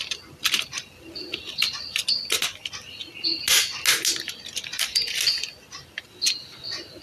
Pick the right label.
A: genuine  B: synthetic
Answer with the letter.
A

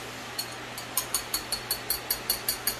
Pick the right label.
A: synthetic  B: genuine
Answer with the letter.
B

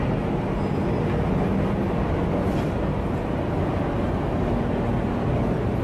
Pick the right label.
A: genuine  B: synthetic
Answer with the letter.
A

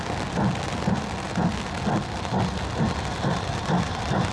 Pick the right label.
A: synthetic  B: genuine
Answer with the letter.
B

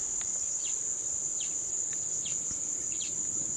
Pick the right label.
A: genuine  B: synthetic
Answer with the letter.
A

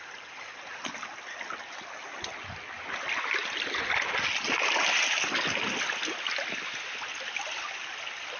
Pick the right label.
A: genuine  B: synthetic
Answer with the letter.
A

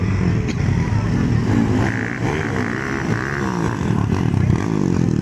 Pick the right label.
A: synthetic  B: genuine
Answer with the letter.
B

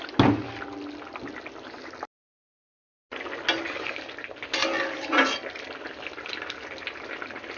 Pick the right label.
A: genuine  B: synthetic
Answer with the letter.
A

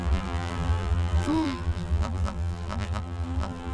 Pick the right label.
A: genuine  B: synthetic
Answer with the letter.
B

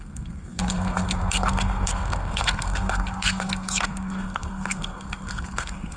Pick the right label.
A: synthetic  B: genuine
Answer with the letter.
A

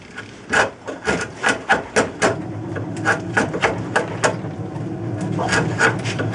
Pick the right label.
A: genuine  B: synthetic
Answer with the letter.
A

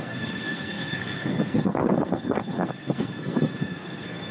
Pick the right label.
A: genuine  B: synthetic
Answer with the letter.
B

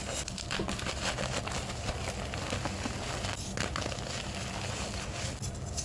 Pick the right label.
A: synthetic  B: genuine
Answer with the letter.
B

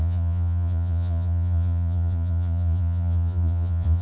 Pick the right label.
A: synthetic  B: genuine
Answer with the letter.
A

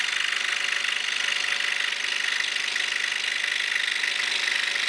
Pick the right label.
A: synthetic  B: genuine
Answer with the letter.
B